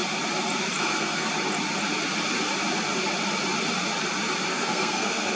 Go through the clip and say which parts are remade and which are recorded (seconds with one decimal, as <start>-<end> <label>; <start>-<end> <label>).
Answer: 0.0-0.8 recorded; 0.8-1.3 remade; 1.3-4.5 recorded; 4.5-5.4 remade